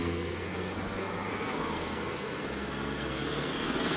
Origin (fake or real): fake